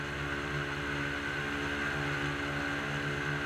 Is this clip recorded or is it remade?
recorded